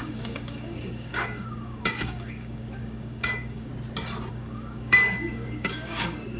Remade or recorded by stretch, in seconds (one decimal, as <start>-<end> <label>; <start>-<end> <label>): 0.0-3.7 remade; 3.7-4.3 recorded; 4.3-6.4 remade